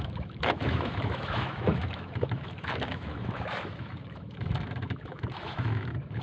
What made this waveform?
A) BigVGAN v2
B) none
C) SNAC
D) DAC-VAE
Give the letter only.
D